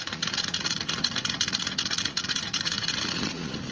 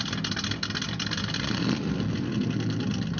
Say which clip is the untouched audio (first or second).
second